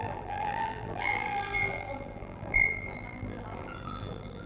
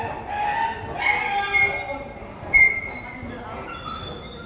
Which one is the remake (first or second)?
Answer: first